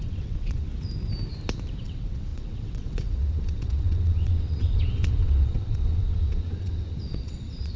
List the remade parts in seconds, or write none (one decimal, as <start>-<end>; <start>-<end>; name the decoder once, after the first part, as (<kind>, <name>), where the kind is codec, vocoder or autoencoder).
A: 0.0-0.7 (vocoder, WaveNeXt); 1.8-7.8

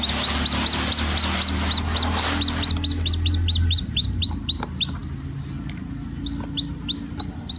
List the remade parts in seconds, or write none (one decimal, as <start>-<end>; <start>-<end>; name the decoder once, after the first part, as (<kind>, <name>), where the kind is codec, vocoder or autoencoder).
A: none

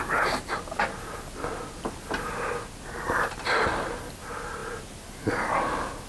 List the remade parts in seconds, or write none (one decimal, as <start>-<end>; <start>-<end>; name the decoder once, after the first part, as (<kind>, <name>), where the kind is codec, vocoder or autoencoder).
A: none

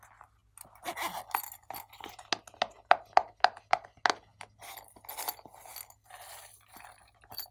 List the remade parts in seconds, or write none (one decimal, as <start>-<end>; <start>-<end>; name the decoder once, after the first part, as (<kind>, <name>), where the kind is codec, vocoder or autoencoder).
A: none

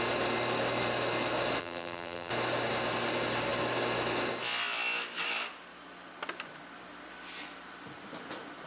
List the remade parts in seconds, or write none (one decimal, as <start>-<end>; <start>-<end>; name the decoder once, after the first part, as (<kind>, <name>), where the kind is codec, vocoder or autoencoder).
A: 1.6-2.3 (vocoder, BigVGAN v2)

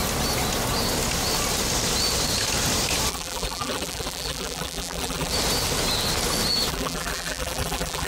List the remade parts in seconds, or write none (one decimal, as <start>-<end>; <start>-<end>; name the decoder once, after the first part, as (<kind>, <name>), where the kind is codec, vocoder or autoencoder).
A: 3.1-5.3 (vocoder, BigVGAN v2); 6.7-8.1